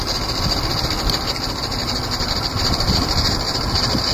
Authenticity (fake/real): fake